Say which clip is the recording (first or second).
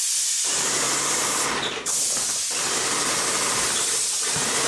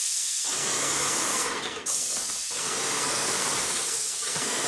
first